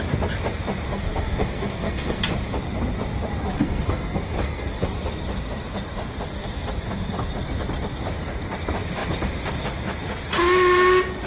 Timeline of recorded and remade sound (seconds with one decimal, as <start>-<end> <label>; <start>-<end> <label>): 0.0-0.9 recorded; 0.9-2.2 remade; 2.2-3.6 recorded; 3.6-4.8 remade; 4.8-11.3 recorded

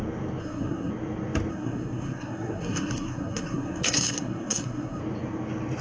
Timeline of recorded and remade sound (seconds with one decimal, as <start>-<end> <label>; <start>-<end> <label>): 0.0-0.4 recorded; 0.4-0.9 remade; 0.9-1.5 recorded; 1.5-5.0 remade; 5.0-5.8 recorded

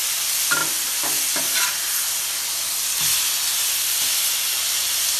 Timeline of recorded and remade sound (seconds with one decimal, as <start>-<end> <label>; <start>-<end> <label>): 0.0-5.2 recorded

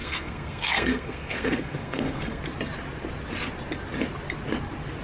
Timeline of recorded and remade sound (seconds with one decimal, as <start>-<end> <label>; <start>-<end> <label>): 0.0-2.4 remade; 2.4-5.0 recorded

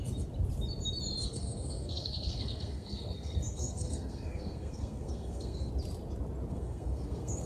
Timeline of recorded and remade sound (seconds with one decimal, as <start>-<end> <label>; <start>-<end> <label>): 0.0-1.2 recorded; 1.2-5.7 remade; 5.7-6.5 recorded; 6.5-7.5 remade

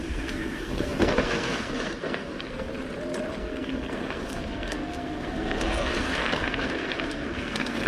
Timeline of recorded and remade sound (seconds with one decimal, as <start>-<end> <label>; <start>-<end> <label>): 0.0-2.7 remade; 2.7-3.3 recorded; 3.3-7.9 remade

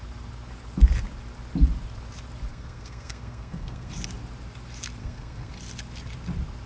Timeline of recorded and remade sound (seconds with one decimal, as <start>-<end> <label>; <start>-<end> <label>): 0.0-2.5 recorded; 2.5-3.9 remade; 3.9-5.0 recorded; 5.0-5.5 remade; 5.5-6.7 recorded

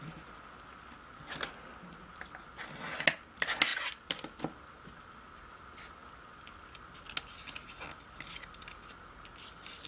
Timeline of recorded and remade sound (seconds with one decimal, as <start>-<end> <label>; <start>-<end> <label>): 0.0-9.9 recorded